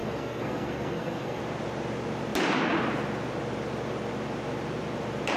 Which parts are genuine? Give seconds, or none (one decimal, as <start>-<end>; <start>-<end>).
1.4-5.4